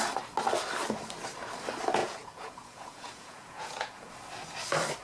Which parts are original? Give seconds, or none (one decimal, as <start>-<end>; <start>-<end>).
0.0-2.0; 4.1-5.0